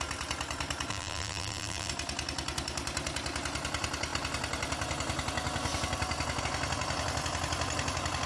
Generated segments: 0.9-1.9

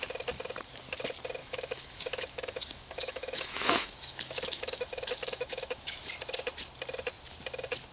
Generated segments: 1.4-6.1

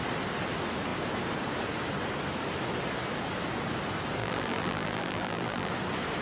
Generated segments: 4.2-5.7

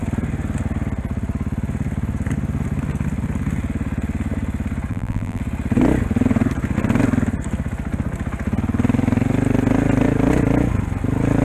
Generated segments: 4.9-5.4

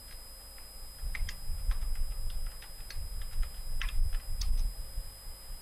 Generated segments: none

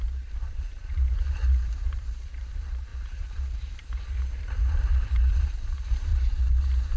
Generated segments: 0.0-6.1; 6.6-7.0

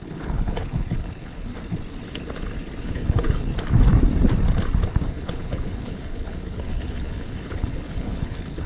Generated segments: 0.0-1.5; 2.8-3.5; 5.1-8.7